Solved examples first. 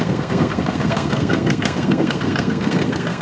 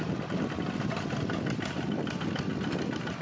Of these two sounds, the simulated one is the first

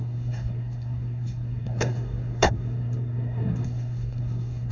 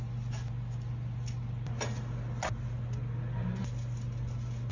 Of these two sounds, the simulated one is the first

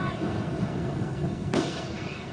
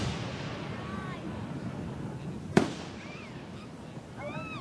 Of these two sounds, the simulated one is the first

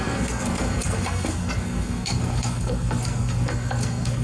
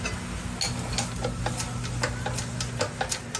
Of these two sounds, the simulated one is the first